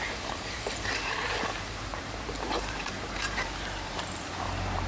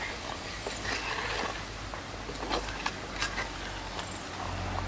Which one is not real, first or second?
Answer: first